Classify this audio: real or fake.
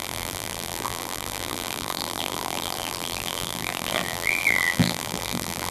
fake